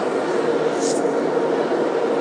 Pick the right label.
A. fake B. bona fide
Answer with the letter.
B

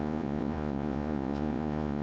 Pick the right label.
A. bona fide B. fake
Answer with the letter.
B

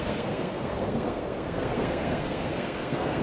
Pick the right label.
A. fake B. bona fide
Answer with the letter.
A